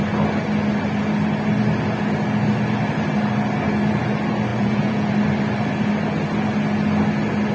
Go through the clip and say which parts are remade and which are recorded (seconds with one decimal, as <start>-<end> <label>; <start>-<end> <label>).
0.0-4.5 recorded; 4.5-5.1 remade; 5.1-7.5 recorded